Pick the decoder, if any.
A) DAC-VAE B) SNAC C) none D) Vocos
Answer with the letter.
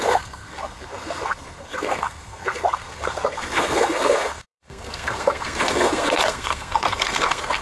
B